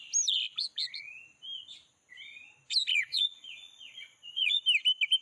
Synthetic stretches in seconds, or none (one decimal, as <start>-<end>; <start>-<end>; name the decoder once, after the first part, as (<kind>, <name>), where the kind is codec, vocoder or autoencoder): 2.9-4.6 (vocoder, Vocos)